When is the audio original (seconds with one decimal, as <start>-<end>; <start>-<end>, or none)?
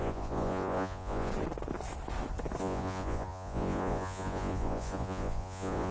1.3-2.6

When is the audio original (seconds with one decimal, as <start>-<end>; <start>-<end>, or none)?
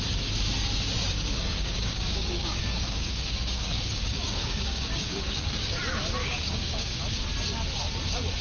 0.0-1.0; 5.8-6.2; 7.0-8.4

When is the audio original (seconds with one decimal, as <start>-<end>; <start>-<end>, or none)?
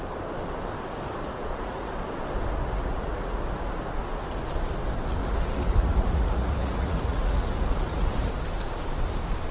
0.0-1.2; 1.9-2.6; 3.4-5.2; 8.3-9.5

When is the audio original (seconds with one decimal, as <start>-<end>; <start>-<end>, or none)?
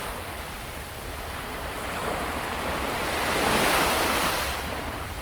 0.0-5.2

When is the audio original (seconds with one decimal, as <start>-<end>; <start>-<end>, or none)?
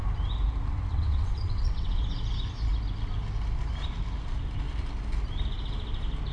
0.0-0.9; 2.0-6.3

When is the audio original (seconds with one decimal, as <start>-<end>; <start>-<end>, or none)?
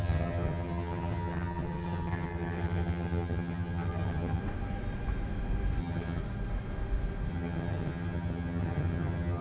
4.4-5.8; 6.2-7.3